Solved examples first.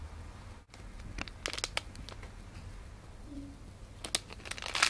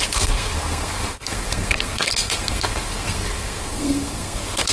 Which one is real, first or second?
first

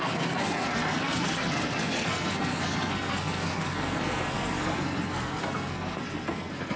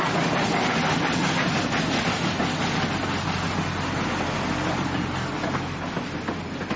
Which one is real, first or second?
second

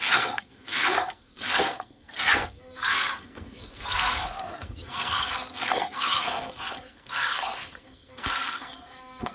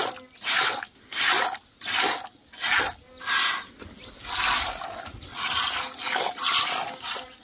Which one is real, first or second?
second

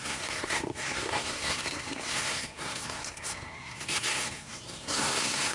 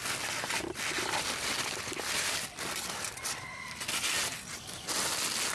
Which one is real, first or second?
second